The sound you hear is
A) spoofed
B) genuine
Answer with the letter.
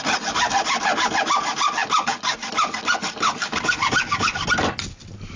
B